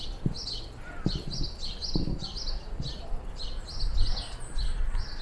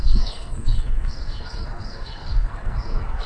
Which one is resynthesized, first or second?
second